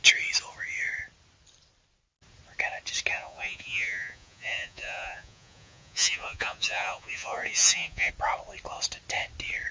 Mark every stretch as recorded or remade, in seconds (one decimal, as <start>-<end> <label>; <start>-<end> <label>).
0.0-3.1 recorded; 3.1-8.1 remade; 8.1-9.7 recorded